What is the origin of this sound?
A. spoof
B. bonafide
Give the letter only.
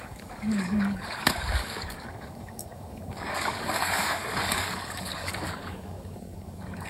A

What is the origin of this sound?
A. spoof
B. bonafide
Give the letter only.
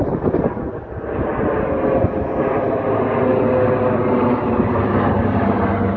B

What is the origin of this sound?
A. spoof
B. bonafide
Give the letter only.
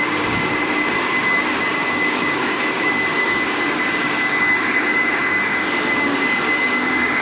A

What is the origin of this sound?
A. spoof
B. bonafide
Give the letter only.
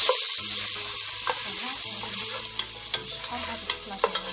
B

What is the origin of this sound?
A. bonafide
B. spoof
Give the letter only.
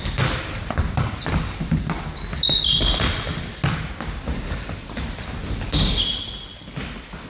A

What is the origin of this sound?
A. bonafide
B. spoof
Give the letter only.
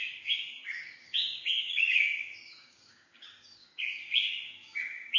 B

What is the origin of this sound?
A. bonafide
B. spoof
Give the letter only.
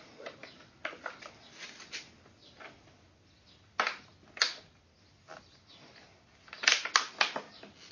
A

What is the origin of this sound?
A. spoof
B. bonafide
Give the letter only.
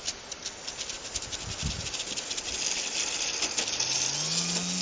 B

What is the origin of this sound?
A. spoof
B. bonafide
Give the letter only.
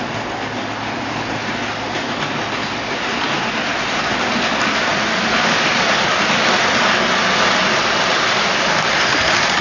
B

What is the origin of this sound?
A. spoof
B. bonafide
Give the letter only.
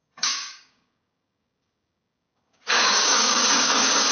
A